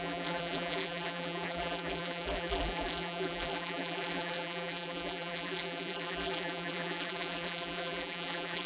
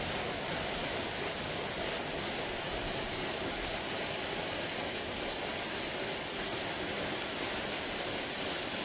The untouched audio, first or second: second